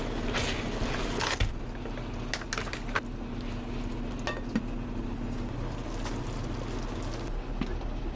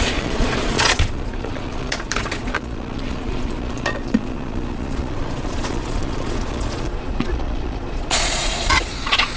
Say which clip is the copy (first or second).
second